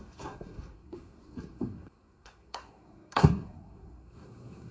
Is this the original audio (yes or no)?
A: no